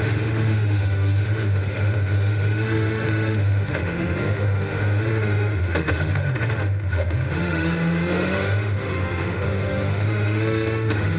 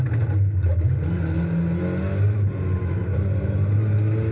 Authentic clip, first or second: second